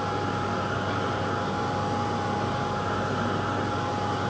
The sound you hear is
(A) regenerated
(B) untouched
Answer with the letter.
B